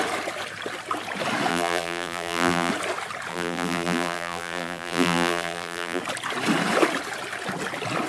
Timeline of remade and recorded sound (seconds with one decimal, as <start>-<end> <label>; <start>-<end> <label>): 0.0-1.5 recorded; 1.5-2.7 remade; 2.7-3.3 recorded; 3.3-6.0 remade; 6.0-8.1 recorded